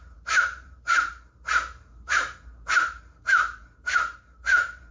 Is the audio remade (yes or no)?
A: yes